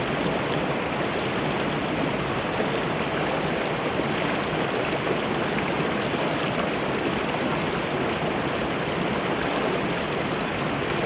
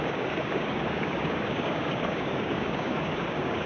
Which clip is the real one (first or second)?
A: first